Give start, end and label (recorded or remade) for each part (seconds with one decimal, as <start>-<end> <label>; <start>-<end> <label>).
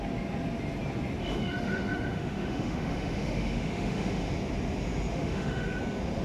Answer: 0.0-1.2 recorded; 1.2-4.3 remade; 4.3-5.1 recorded; 5.1-5.8 remade; 5.8-6.2 recorded